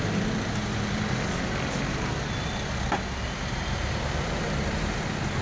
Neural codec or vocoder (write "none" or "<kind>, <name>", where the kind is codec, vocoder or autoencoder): none